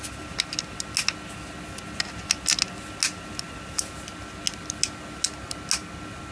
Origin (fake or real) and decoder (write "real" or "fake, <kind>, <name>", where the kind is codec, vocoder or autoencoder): real